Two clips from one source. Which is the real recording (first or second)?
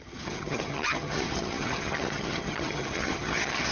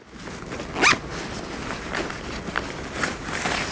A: second